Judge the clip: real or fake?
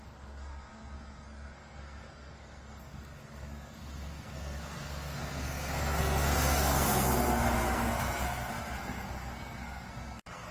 fake